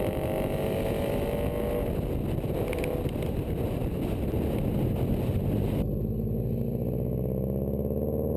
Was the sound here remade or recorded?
recorded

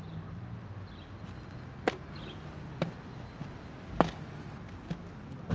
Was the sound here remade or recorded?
recorded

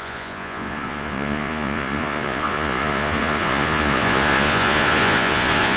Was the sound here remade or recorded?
remade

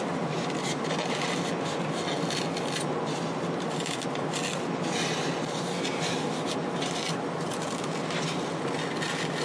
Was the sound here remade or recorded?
recorded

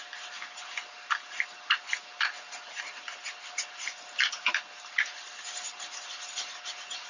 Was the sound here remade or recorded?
recorded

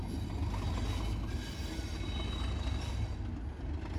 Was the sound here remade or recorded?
recorded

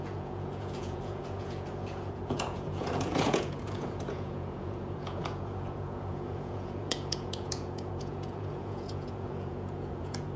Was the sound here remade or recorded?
remade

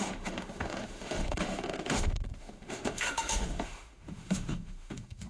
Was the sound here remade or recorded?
remade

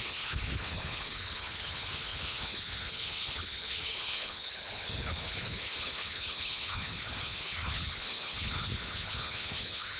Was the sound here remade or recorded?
remade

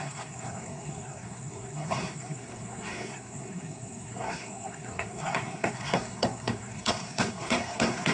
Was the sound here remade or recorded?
remade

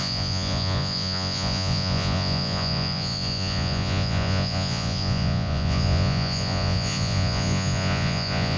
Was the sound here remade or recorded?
remade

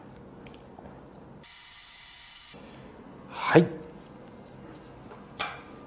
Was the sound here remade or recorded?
recorded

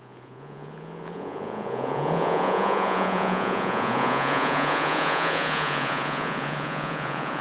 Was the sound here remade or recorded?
remade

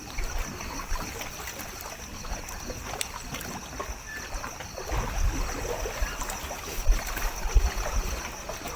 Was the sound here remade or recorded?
recorded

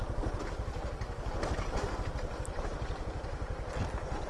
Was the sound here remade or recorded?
recorded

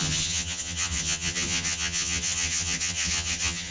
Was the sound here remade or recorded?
remade